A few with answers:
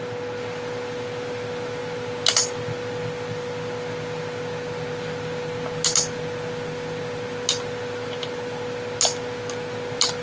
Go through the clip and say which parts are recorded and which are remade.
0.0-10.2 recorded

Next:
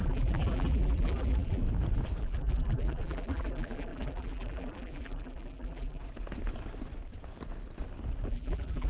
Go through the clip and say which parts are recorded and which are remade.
0.0-1.6 remade; 1.6-2.2 recorded; 2.2-6.0 remade; 6.0-8.3 recorded; 8.3-8.9 remade

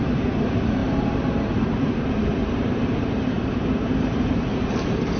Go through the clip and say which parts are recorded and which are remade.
0.0-5.2 remade

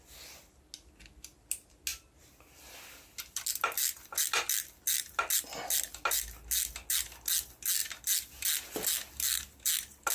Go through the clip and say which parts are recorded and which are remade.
0.0-10.1 recorded

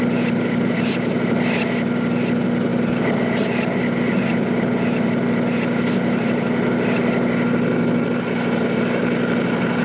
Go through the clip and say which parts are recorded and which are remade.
0.0-9.8 recorded

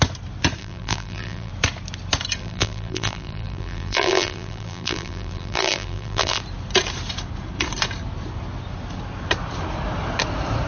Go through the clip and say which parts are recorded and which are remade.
0.0-0.6 recorded; 0.6-1.5 remade; 1.5-2.4 recorded; 2.4-6.4 remade; 6.4-10.7 recorded